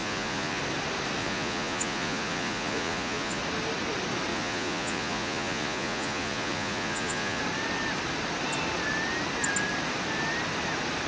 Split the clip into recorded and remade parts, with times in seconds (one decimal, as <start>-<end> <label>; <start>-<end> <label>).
0.0-0.6 remade; 0.6-1.2 recorded; 1.2-3.4 remade; 3.4-4.3 recorded; 4.3-7.4 remade; 7.4-11.1 recorded